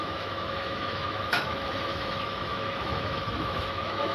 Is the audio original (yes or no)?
no